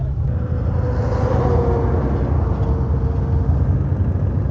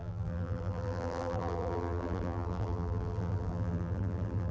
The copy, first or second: second